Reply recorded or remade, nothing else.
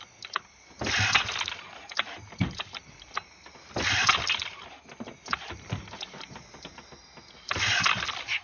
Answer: recorded